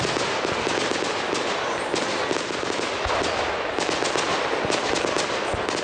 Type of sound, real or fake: real